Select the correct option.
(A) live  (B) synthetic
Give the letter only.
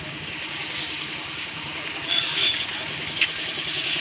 B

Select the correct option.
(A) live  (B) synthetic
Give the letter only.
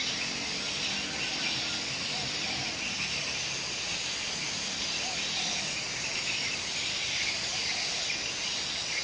A